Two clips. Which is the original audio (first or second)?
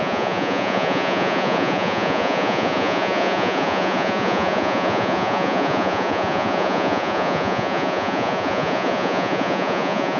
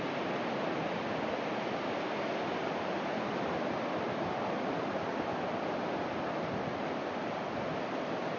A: second